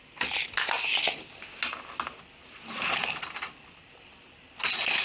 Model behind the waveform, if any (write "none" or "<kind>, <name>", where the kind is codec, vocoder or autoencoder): none